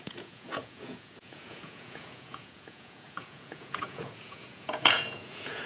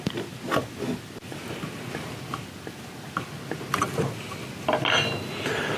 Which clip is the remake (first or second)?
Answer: first